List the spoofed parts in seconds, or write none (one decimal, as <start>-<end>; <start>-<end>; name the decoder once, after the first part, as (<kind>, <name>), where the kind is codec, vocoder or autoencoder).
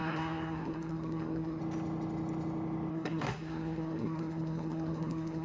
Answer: 0.0-1.6 (codec, SNAC); 2.9-5.4